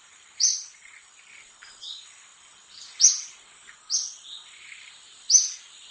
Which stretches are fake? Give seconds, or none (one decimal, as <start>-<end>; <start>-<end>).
0.0-5.9